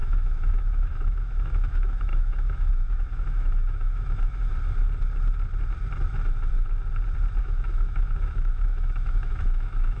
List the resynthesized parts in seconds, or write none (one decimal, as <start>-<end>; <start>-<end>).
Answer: 0.0-4.5; 7.4-10.0